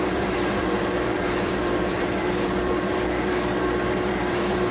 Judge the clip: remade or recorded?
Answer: remade